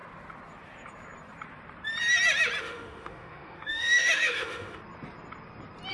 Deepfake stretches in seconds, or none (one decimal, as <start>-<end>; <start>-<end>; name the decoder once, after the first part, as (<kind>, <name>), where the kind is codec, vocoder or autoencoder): 2.6-4.8 (autoencoder, DAC-VAE)